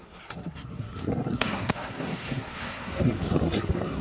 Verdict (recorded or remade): remade